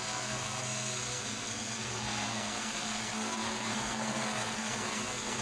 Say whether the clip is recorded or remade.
remade